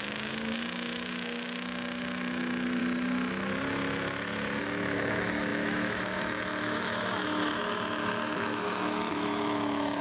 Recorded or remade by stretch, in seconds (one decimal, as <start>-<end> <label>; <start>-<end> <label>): 0.0-2.8 remade; 2.8-4.6 recorded; 4.6-10.0 remade